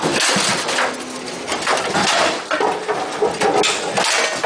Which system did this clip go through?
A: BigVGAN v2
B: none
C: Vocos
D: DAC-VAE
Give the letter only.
B